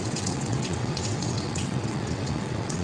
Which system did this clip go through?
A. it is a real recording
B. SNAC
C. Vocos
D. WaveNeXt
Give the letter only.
D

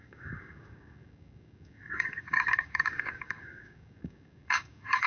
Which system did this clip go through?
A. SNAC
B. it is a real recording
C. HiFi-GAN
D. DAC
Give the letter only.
D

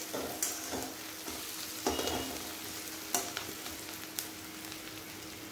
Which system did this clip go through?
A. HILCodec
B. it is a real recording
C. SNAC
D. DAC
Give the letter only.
B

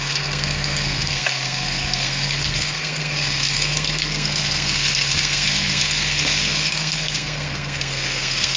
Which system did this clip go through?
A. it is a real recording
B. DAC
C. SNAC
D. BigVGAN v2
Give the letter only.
C